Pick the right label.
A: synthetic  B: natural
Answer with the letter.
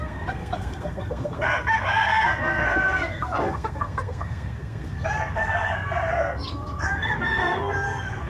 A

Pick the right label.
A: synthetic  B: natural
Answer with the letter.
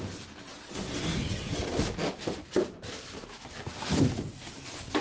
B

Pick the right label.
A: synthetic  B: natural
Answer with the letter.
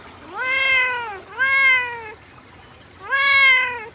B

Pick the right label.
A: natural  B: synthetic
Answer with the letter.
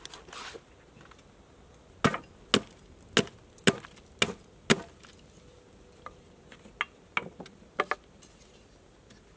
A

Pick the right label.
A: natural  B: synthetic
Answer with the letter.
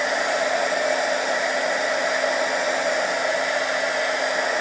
A